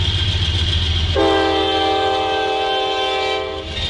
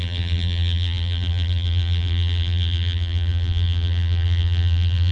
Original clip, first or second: first